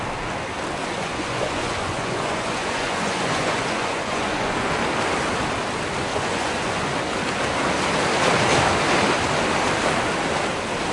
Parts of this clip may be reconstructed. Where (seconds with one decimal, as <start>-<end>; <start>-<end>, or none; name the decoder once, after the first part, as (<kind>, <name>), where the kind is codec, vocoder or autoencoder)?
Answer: 0.8-4.7 (vocoder, Vocos); 6.1-6.9